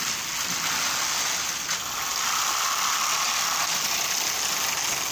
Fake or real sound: real